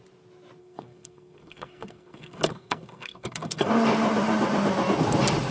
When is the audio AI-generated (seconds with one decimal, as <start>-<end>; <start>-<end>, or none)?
0.6-3.7